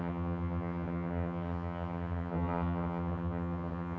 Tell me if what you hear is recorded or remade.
remade